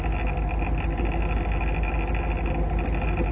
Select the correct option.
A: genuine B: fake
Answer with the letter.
A